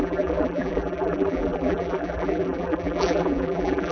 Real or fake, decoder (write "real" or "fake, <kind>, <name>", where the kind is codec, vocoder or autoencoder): fake, vocoder, BigVGAN v2